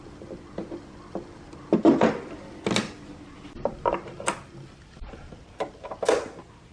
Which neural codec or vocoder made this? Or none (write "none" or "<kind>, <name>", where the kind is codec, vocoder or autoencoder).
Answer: none